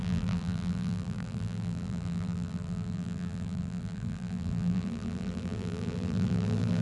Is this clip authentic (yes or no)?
no